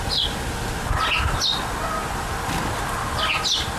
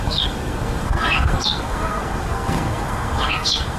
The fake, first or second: second